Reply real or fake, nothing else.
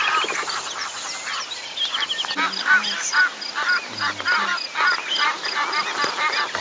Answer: real